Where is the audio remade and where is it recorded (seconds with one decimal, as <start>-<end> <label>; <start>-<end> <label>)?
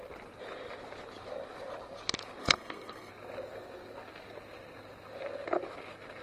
0.0-2.4 recorded; 2.4-3.1 remade; 3.1-6.2 recorded